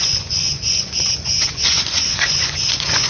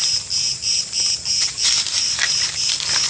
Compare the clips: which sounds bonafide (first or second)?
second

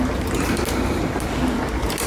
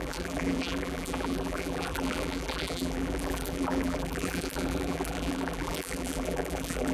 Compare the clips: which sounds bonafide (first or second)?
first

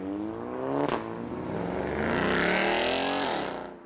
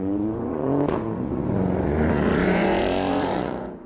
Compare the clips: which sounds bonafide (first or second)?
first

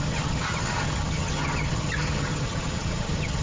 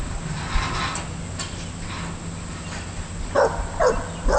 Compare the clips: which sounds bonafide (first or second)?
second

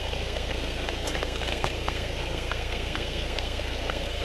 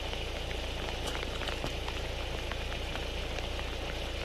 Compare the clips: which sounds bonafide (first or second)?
second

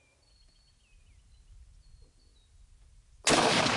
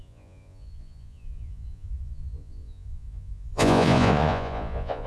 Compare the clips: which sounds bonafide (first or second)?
first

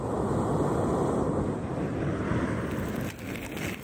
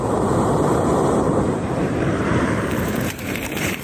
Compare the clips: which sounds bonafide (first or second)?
first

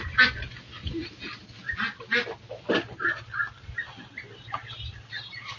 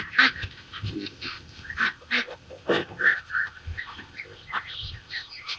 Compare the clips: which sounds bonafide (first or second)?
first